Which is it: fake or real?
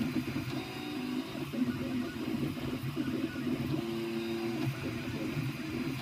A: real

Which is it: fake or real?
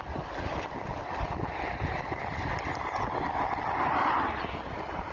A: real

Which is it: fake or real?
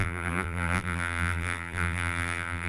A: fake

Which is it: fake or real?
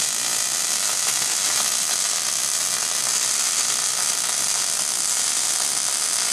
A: real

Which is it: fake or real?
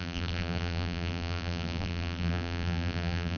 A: fake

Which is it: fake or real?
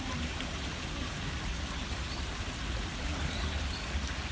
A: fake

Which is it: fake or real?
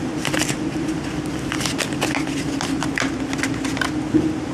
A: real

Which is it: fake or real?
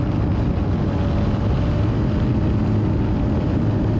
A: real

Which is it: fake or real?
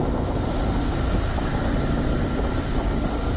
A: real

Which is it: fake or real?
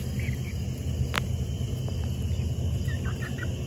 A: real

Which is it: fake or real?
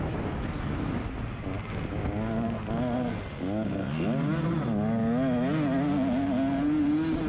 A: real